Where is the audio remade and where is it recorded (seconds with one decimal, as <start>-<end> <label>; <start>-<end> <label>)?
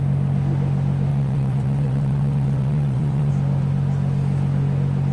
0.0-1.1 recorded; 1.1-3.3 remade; 3.3-5.1 recorded